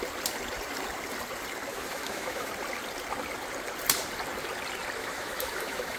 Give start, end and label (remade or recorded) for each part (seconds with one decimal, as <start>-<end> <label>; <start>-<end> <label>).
0.0-1.7 recorded; 1.7-2.5 remade; 2.5-5.0 recorded; 5.0-6.0 remade